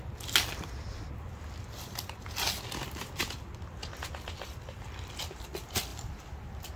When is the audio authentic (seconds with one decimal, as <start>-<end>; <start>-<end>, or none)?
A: 0.0-6.8